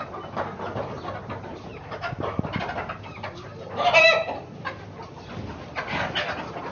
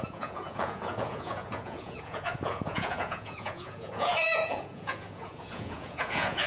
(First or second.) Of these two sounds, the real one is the first